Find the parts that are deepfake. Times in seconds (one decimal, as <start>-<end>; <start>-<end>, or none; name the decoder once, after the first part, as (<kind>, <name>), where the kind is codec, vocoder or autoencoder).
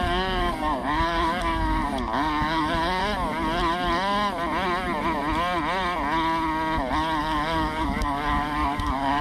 0.0-3.0 (codec, DAC); 7.2-9.2